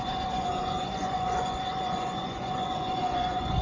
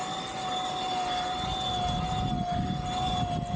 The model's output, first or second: first